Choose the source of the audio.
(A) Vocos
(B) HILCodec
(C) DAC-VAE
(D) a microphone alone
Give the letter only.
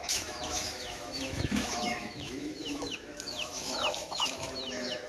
C